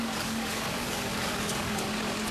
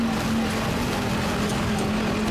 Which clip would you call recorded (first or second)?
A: second